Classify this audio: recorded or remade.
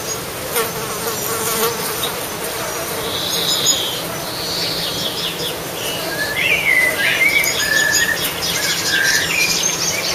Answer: recorded